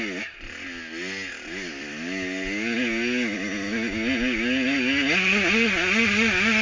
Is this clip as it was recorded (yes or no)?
yes